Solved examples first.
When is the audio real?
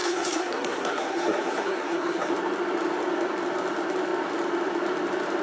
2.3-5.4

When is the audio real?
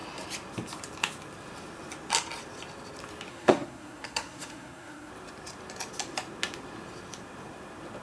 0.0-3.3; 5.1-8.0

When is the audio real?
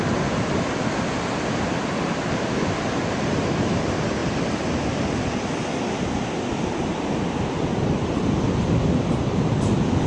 0.0-10.1